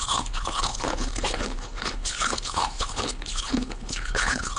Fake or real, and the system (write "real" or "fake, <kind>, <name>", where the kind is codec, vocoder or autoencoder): fake, codec, HILCodec